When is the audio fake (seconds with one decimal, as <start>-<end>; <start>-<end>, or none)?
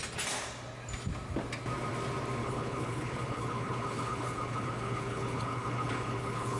2.4-6.6